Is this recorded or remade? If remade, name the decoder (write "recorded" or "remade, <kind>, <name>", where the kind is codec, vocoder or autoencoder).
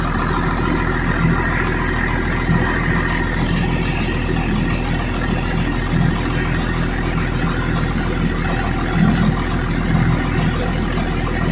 recorded